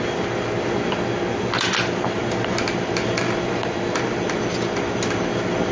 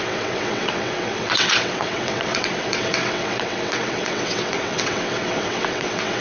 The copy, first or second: second